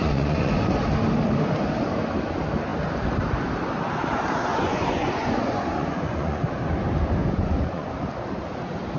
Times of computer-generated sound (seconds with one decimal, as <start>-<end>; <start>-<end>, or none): 0.0-0.5; 4.5-6.4; 7.2-7.9